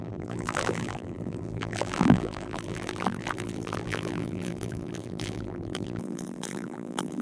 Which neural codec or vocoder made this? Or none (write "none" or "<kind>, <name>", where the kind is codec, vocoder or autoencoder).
vocoder, BigVGAN v2